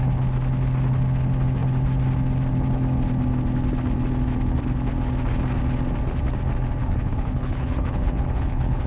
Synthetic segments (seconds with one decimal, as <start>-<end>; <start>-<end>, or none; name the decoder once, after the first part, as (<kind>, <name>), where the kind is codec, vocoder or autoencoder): 6.8-8.9 (codec, HILCodec)